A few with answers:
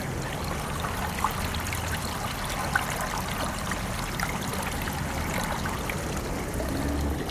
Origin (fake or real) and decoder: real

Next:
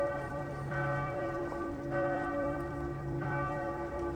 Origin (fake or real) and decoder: fake, vocoder, BigVGAN v2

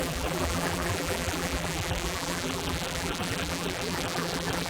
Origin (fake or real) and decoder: fake, vocoder, BigVGAN v2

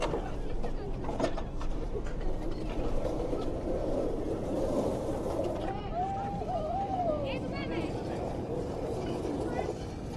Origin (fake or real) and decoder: fake, vocoder, BigVGAN v2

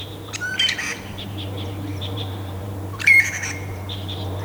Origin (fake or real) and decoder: fake, vocoder, BigVGAN v2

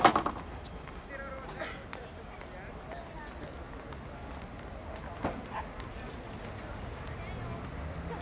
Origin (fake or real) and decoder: real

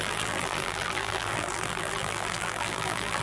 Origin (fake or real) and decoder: fake, vocoder, BigVGAN v2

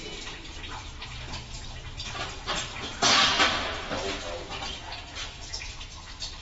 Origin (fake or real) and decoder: real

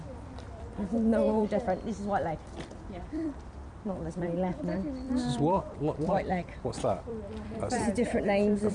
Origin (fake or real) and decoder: fake, vocoder, BigVGAN v2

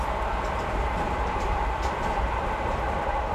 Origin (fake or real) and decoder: fake, vocoder, BigVGAN v2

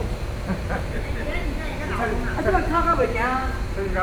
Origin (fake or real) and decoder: fake, vocoder, BigVGAN v2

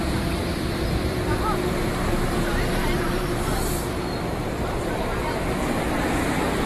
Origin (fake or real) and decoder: fake, vocoder, BigVGAN v2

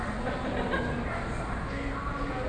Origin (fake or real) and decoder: real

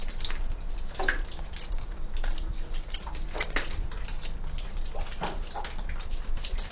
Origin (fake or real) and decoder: fake, vocoder, BigVGAN v2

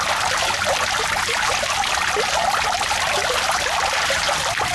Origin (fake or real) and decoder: real